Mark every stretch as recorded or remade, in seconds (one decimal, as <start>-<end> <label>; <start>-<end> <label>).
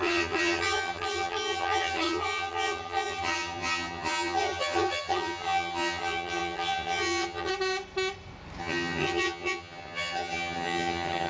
0.0-7.5 remade; 7.5-8.6 recorded; 8.6-11.3 remade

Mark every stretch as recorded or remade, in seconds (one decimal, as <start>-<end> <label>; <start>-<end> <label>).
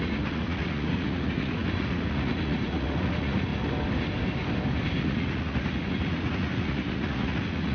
0.0-3.5 remade; 3.5-5.0 recorded; 5.0-7.7 remade